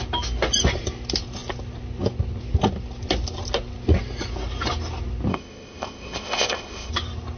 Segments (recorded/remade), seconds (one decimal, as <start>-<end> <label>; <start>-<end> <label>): 0.0-5.3 recorded; 5.3-6.9 remade; 6.9-7.4 recorded